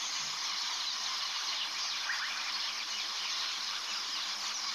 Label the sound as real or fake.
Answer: real